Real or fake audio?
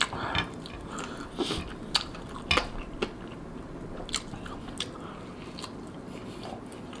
real